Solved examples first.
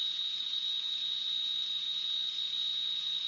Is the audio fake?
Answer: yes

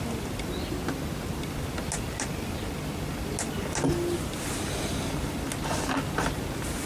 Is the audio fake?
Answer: no